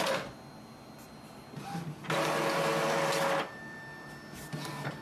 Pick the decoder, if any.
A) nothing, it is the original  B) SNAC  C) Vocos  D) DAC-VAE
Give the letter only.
A